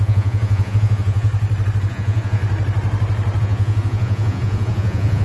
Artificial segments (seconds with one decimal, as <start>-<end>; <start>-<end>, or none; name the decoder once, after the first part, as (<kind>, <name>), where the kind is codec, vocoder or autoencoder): 0.0-1.3 (vocoder, Vocos); 1.9-2.4; 3.4-5.2